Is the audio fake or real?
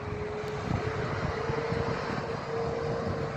real